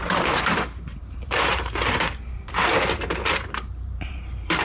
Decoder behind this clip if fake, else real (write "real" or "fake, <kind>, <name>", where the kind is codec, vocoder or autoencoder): fake, vocoder, BigVGAN v2